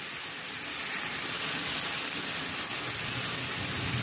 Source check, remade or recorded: recorded